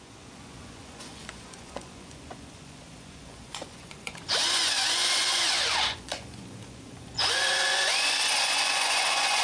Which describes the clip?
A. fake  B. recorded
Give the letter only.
A